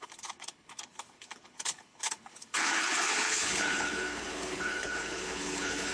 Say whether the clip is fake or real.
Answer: fake